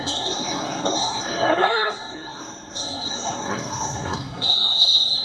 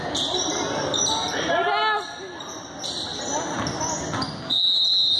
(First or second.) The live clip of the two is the second